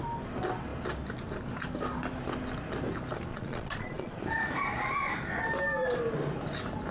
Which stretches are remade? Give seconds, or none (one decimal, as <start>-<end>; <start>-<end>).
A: 3.3-4.2